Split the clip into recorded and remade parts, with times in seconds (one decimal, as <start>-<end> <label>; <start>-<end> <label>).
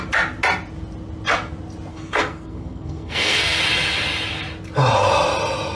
0.0-1.9 recorded; 1.9-3.6 remade; 3.6-5.8 recorded